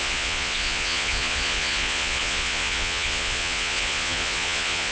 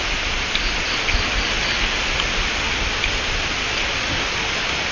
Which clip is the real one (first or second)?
second